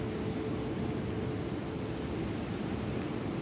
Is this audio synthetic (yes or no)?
no